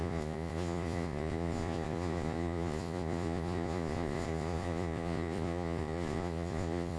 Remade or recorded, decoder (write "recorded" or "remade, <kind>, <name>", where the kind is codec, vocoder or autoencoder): remade, vocoder, Vocos